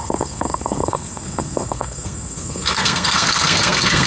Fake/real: fake